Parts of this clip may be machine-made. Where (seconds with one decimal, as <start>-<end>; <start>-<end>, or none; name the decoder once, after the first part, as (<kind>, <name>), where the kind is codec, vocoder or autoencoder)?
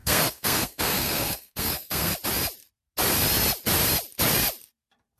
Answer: 0.0-2.1 (codec, SNAC)